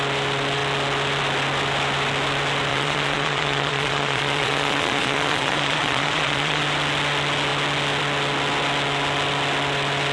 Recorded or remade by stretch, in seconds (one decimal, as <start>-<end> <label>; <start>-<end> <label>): 0.0-2.7 recorded; 2.7-6.6 remade; 6.6-10.1 recorded